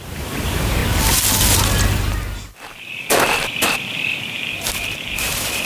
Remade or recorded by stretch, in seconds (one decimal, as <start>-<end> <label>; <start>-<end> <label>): 0.0-0.8 remade; 0.8-4.2 recorded; 4.2-5.7 remade

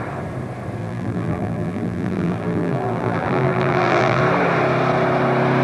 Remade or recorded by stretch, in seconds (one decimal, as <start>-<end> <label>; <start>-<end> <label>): 0.0-0.8 recorded; 0.8-4.2 remade; 4.2-5.6 recorded

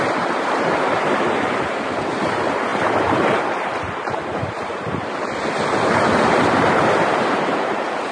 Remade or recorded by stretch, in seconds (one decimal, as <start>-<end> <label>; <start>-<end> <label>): 0.0-8.1 remade